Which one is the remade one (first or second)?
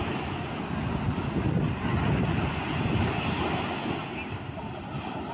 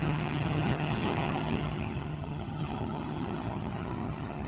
second